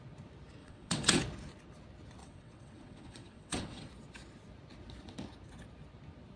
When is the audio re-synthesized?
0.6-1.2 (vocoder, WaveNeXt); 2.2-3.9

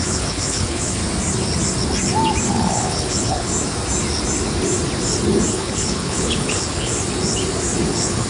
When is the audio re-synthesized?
0.0-1.0 (codec, HILCodec); 2.5-3.5; 5.5-6.9; 7.9-8.3